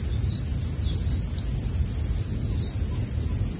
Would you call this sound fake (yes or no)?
no